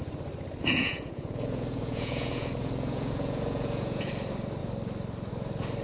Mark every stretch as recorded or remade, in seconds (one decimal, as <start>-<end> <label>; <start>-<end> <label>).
0.0-0.6 recorded; 0.6-4.1 remade; 4.1-5.8 recorded